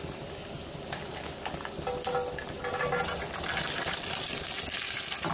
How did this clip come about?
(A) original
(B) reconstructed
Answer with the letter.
A